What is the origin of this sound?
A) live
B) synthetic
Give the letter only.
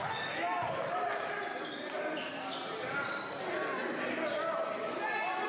A